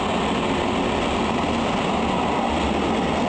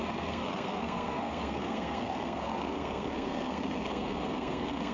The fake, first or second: second